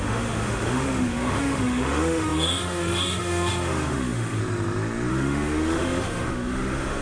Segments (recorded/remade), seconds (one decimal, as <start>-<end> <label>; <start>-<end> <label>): 0.0-4.4 remade; 4.4-5.1 recorded; 5.1-7.0 remade